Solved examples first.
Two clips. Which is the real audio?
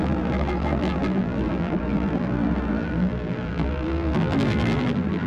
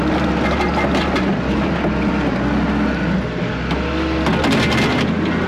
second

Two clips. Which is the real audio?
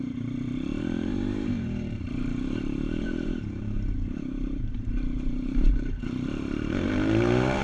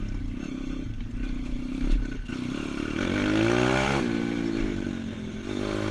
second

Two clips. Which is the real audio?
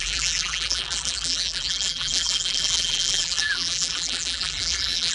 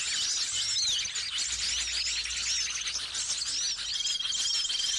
second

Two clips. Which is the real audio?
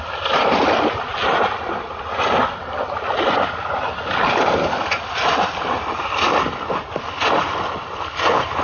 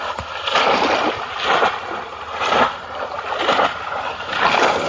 second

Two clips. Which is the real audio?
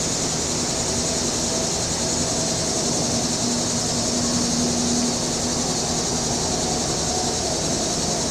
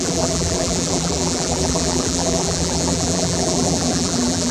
first